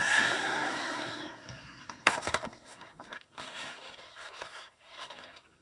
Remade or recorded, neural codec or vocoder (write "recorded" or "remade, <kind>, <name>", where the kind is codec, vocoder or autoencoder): remade, codec, SNAC